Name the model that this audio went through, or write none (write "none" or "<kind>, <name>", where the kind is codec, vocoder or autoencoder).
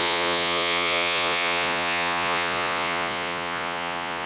vocoder, Vocos